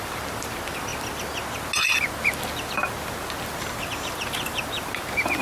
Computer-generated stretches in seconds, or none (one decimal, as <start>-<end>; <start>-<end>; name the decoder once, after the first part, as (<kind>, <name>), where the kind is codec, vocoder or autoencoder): 0.0-0.9 (vocoder, BigVGAN v2); 4.1-5.4